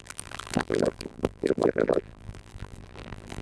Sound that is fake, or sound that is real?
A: fake